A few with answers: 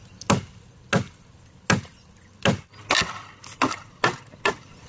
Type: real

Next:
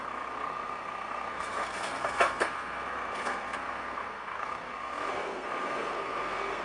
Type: fake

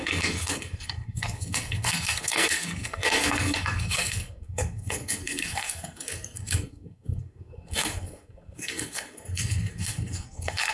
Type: fake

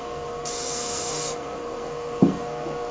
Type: fake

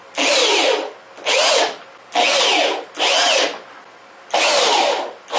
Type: real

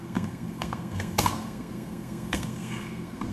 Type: fake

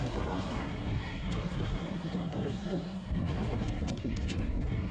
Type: fake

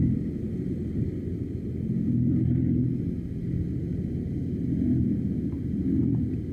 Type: real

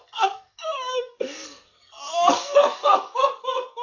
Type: fake